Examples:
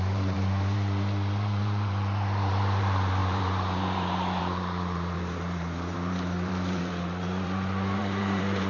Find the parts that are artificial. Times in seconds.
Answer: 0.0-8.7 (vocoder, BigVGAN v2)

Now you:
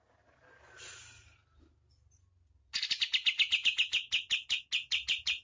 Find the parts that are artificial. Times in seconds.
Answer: none

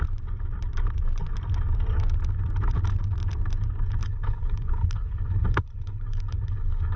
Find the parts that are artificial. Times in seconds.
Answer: 4.0-7.0 (codec, HILCodec)

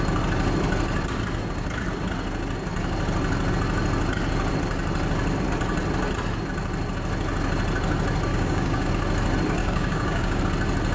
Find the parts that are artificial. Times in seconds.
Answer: 8.3-8.9 (codec, DAC); 9.6-10.4

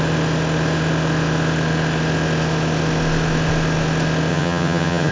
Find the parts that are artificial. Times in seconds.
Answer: 4.3-5.1 (vocoder, HiFi-GAN)

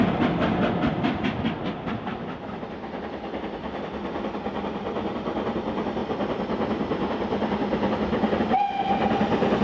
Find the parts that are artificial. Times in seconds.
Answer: none